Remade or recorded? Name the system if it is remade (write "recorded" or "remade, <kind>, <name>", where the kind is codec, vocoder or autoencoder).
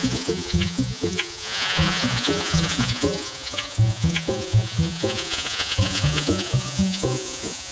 remade, vocoder, Vocos